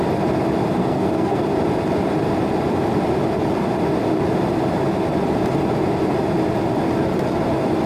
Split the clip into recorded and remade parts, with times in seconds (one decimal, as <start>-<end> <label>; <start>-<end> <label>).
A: 0.0-0.8 recorded; 0.8-1.4 remade; 1.4-7.9 recorded